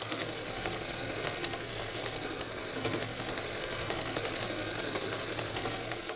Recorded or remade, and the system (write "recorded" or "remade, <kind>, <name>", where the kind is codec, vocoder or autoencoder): remade, codec, SNAC